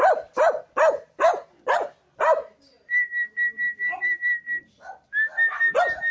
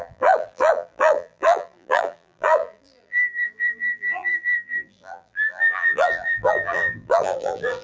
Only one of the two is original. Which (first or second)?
first